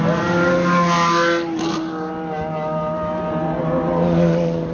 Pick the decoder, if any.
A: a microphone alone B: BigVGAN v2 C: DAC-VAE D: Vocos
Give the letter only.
A